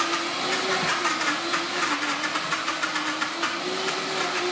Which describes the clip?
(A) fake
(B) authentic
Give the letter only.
B